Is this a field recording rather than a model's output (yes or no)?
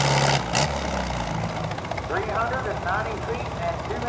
yes